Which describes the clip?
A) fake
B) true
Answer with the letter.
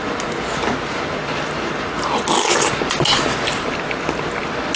B